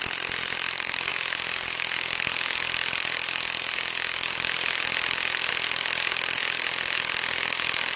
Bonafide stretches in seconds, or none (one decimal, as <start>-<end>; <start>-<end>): 0.0-8.0